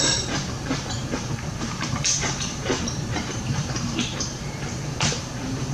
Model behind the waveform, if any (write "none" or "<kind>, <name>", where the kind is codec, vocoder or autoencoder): vocoder, BigVGAN v2